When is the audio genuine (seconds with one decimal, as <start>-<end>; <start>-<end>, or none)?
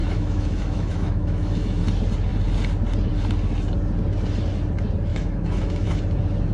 1.8-5.1; 6.0-6.5